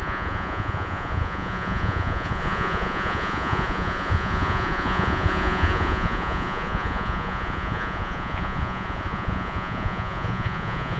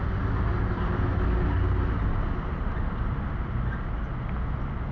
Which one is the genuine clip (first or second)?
second